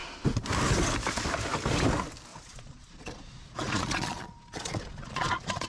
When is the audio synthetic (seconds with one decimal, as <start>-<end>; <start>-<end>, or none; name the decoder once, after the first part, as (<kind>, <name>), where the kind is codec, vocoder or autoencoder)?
2.3-5.7 (vocoder, Vocos)

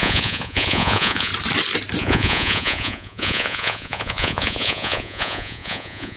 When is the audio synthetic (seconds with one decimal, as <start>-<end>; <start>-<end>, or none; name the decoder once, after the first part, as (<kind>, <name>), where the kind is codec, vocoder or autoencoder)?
0.0-1.3 (vocoder, Vocos); 2.0-6.2

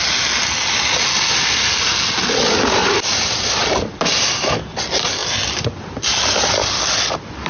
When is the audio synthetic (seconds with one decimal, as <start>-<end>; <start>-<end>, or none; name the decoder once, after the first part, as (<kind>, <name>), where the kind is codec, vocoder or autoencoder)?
2.8-4.4 (vocoder, BigVGAN v2)

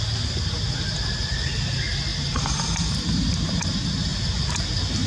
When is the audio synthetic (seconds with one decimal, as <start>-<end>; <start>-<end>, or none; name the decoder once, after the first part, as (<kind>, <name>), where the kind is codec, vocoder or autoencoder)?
2.1-3.5 (vocoder, BigVGAN v2)

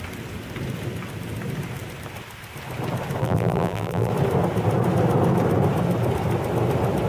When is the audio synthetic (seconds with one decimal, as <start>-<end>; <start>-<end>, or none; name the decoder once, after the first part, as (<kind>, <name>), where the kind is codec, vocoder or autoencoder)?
3.2-4.1 (vocoder, BigVGAN v2)

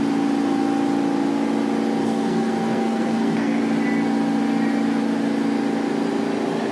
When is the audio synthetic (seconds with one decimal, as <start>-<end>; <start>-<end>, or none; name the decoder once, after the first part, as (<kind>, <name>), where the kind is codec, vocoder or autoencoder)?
2.0-3.6 (codec, SNAC)

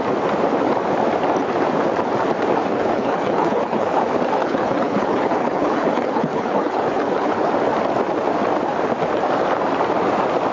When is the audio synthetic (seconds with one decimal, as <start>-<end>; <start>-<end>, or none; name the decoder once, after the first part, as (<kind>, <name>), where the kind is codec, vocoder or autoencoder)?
2.7-4.0 (codec, HILCodec); 4.4-7.5

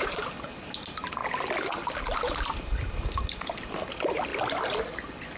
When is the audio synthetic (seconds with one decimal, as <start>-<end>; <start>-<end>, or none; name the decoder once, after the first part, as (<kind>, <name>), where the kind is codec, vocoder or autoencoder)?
none